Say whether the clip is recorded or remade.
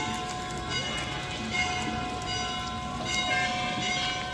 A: recorded